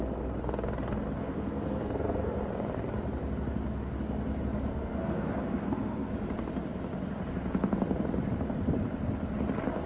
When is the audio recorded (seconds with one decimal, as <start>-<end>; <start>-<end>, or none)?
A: 0.0-1.2; 2.4-4.7; 6.1-9.9